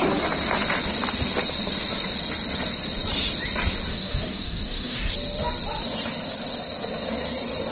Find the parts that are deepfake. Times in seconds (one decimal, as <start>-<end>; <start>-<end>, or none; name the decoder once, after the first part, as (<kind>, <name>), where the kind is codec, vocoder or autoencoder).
3.9-5.1 (codec, DAC)